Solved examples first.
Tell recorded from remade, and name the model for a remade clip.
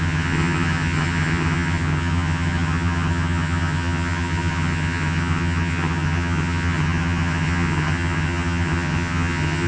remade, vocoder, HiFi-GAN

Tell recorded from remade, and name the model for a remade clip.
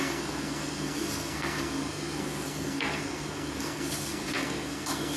remade, codec, SNAC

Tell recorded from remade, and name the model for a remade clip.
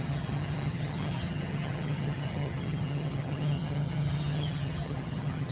remade, vocoder, HiFi-GAN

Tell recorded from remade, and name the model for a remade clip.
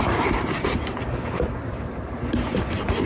remade, vocoder, BigVGAN v2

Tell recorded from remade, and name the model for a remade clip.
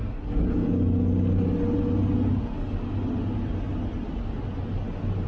recorded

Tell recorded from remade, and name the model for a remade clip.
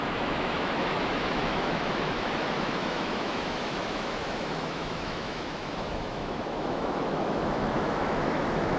remade, autoencoder, DAC-VAE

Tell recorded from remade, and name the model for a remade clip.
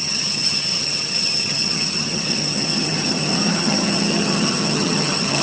remade, vocoder, HiFi-GAN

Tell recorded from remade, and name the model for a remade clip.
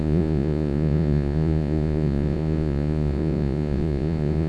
remade, vocoder, Vocos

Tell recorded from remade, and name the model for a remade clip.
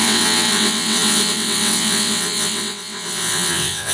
remade, vocoder, WaveNeXt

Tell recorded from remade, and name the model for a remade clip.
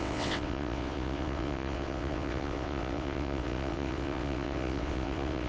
remade, vocoder, WaveNeXt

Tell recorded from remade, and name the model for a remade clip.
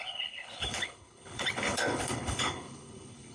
remade, codec, HILCodec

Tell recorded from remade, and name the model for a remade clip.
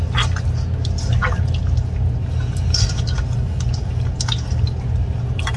recorded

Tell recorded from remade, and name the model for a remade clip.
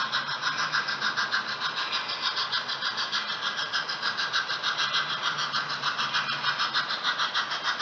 recorded